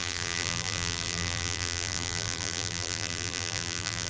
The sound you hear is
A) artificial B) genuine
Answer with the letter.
A